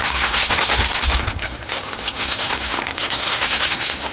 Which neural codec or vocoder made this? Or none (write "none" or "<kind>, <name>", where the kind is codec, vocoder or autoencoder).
codec, SNAC